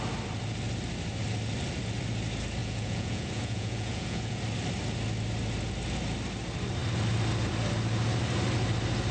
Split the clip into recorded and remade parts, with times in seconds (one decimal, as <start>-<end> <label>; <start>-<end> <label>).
0.0-2.6 recorded; 2.6-4.4 remade; 4.4-9.1 recorded